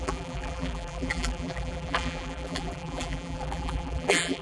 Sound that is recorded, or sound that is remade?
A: remade